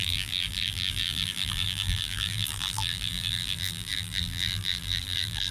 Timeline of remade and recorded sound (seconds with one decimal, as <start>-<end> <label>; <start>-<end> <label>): 0.0-5.5 remade